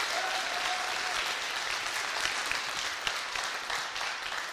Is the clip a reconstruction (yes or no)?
no